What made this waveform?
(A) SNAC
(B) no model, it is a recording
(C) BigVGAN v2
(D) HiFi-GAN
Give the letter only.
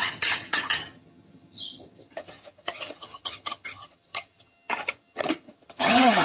D